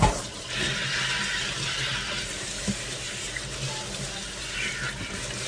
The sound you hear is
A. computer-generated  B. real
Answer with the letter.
B